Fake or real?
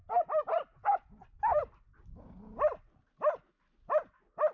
real